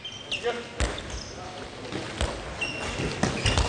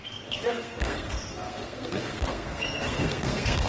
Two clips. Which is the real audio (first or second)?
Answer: first